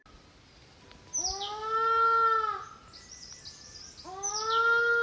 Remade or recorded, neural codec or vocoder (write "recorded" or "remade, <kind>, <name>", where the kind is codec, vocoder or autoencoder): recorded